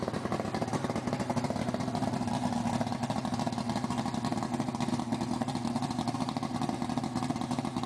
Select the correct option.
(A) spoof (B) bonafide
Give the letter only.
B